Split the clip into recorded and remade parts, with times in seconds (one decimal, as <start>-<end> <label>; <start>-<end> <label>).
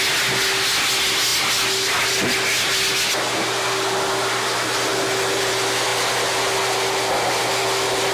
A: 0.0-8.1 recorded